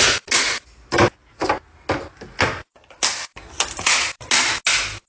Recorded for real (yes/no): yes